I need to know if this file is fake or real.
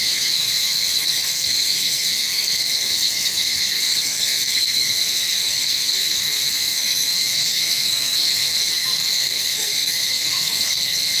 fake